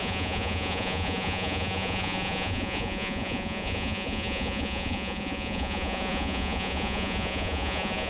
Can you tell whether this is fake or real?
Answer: fake